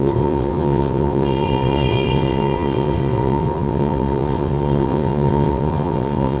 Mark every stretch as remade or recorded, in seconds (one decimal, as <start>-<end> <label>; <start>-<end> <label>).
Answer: 0.0-6.4 remade